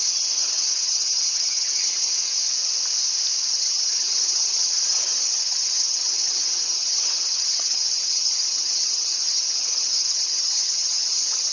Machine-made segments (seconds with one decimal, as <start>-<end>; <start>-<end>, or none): 0.0-2.4; 3.5-11.5